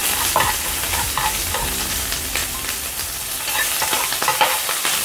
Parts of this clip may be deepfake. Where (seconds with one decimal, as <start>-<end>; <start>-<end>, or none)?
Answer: 2.4-3.5